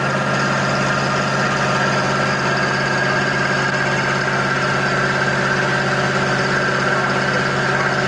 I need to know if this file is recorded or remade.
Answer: recorded